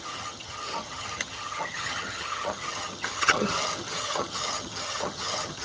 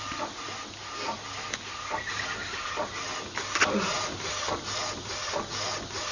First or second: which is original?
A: second